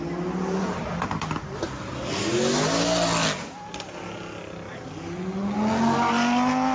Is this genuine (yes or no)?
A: yes